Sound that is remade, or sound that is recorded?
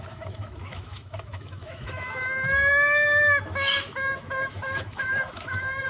remade